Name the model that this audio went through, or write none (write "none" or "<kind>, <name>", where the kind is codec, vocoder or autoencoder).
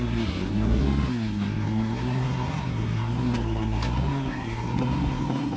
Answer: codec, SNAC